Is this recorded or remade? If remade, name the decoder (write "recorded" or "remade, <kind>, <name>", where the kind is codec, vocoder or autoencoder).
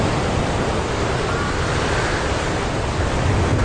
recorded